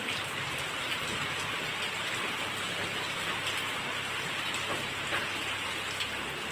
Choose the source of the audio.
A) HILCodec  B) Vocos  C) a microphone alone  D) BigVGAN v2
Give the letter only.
C